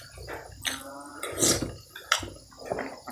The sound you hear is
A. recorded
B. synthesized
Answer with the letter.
A